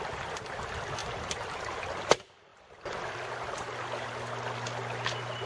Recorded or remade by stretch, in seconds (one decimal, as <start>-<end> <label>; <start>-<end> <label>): 0.0-1.0 recorded; 1.0-1.6 remade; 1.6-5.5 recorded